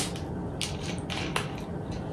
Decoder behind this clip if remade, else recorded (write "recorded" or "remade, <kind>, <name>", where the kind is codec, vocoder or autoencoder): recorded